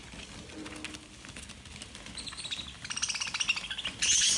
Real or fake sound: real